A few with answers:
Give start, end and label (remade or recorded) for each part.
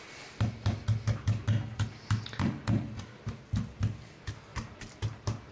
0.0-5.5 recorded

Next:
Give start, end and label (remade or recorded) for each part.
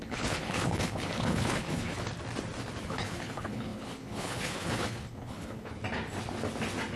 0.0-2.1 remade; 2.1-2.9 recorded; 2.9-5.7 remade; 5.7-7.0 recorded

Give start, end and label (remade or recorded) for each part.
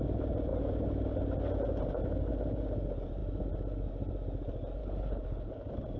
0.0-4.8 recorded; 4.8-5.5 remade; 5.5-6.0 recorded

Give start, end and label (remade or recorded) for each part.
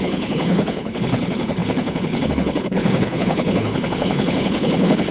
0.0-5.1 remade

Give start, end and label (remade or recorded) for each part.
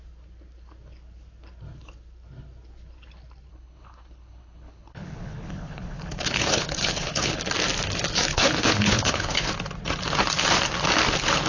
0.0-3.5 recorded; 3.5-7.4 remade; 7.4-8.3 recorded; 8.3-9.5 remade; 9.5-11.5 recorded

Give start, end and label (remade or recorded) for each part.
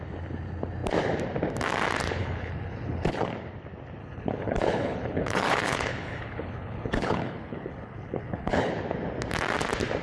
0.0-2.2 recorded; 2.2-3.1 remade; 3.1-4.0 recorded; 4.0-8.7 remade; 8.7-10.0 recorded